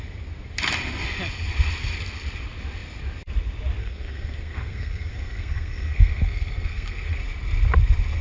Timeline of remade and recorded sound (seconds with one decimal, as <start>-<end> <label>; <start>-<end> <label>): 0.0-3.8 recorded; 3.8-7.2 remade; 7.2-8.2 recorded

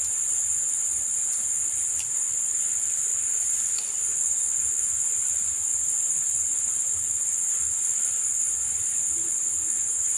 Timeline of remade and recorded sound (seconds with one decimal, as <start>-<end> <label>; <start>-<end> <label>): 0.0-10.2 recorded

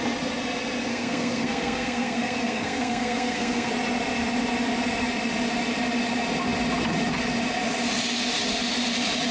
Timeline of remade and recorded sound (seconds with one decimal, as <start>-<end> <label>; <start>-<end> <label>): 0.0-0.9 recorded; 0.9-3.7 remade; 3.7-9.3 recorded

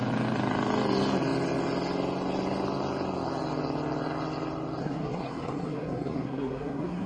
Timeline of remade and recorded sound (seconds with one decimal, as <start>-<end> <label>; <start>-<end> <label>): 0.0-4.8 recorded; 4.8-7.1 remade

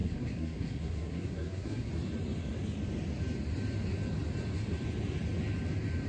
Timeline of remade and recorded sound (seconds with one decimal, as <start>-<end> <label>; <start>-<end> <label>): 0.0-1.9 remade; 1.9-6.1 recorded

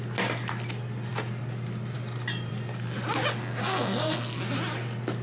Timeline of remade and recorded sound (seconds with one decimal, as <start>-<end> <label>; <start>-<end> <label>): 0.0-3.6 recorded; 3.6-4.4 remade; 4.4-5.2 recorded

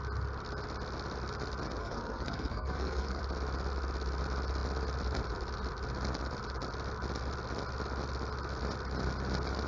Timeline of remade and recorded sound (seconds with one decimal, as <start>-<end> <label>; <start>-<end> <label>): 0.0-1.8 recorded; 1.8-3.2 remade; 3.2-9.7 recorded